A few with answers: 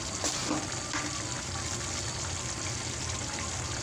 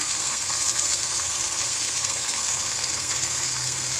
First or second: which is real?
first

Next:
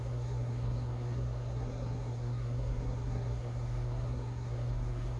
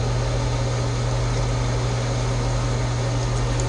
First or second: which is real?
second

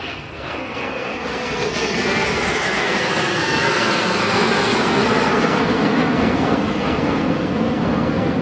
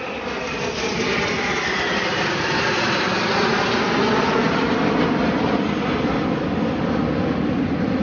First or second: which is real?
second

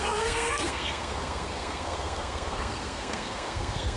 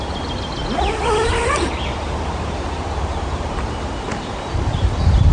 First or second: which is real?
second